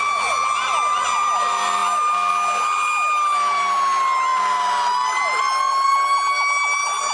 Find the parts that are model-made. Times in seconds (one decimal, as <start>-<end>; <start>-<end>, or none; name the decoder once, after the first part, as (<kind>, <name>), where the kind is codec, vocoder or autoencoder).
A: none